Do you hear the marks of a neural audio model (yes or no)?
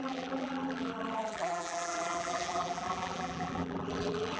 yes